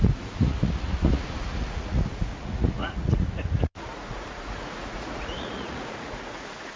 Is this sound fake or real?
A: fake